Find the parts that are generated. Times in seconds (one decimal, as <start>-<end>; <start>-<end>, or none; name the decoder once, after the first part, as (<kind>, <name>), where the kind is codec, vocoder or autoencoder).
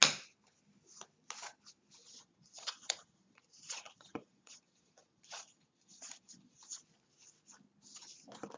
2.0-6.8 (vocoder, Vocos)